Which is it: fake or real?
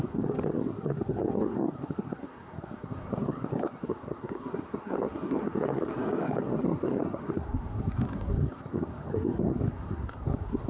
fake